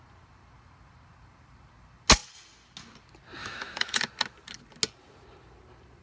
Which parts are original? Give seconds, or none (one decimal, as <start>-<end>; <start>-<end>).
0.0-3.4; 4.0-6.0